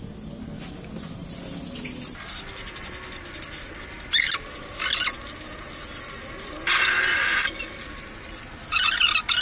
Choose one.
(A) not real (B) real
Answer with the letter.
B